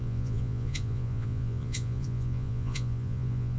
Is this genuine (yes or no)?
no